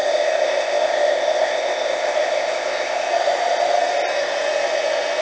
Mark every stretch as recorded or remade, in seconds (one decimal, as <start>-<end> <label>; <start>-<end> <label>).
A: 0.0-3.1 remade; 3.1-5.2 recorded